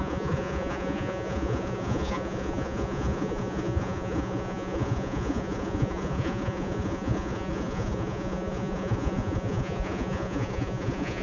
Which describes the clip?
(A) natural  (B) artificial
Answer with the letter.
B